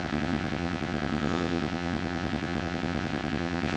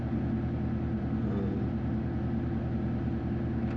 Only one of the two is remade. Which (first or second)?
first